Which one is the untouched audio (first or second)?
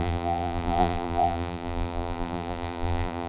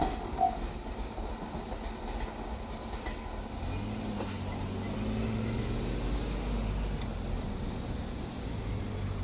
second